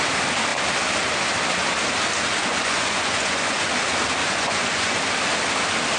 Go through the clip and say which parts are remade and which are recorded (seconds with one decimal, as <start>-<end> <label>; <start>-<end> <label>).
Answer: 0.0-2.5 recorded; 2.5-3.7 remade; 3.7-4.2 recorded; 4.2-5.0 remade; 5.0-6.0 recorded